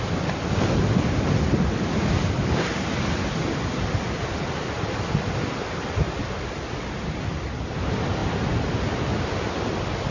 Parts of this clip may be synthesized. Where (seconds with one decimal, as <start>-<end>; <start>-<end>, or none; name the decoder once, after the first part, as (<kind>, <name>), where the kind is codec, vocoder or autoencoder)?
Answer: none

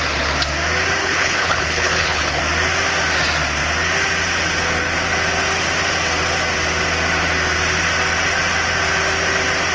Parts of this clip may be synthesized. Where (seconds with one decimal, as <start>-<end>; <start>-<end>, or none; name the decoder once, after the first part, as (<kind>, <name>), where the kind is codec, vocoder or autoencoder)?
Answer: 1.0-2.4 (codec, HILCodec)

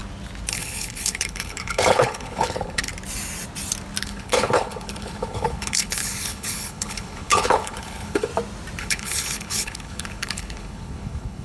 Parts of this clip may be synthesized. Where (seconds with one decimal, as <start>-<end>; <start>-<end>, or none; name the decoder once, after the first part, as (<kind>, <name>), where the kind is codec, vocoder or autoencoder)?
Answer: 0.5-2.9 (codec, HILCodec); 4.0-8.3; 8.8-11.4

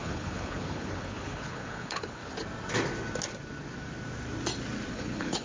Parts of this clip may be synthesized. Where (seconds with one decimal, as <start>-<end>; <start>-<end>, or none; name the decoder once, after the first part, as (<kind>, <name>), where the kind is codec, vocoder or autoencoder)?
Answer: 0.0-2.2 (codec, HILCodec); 4.9-5.4

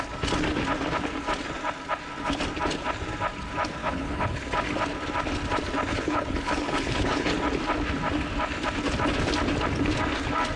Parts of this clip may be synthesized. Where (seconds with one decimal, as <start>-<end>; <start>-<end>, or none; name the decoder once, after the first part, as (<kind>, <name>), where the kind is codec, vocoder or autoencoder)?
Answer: 3.8-4.4 (codec, HILCodec); 5.9-7.3

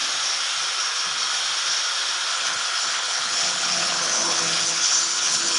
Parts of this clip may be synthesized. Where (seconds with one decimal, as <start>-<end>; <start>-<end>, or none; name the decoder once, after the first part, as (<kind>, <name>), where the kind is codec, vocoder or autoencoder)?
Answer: 2.3-5.6 (codec, HILCodec)

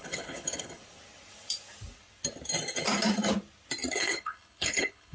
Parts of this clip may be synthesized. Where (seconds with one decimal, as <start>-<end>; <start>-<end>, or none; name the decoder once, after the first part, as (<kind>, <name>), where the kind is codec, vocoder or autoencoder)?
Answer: 0.0-0.8 (codec, HILCodec); 3.9-5.1

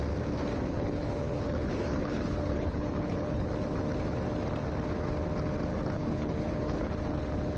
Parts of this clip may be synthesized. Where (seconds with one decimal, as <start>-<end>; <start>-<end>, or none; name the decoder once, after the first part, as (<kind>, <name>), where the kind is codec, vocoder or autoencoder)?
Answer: 0.7-3.5 (codec, HILCodec); 5.7-6.9